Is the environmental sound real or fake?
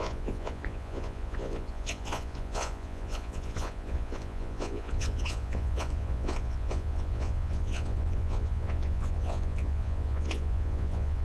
fake